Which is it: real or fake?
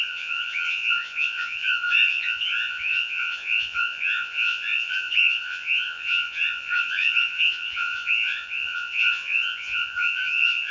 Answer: fake